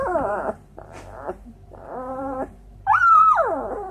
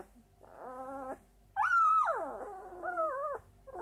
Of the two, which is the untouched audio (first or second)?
second